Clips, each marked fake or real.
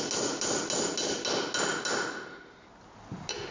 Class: real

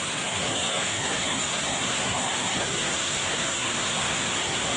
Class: fake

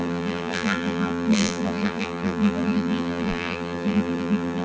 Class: fake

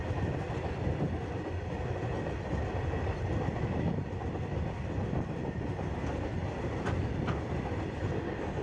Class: real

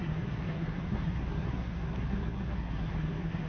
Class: fake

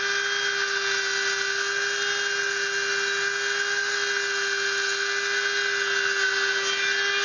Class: real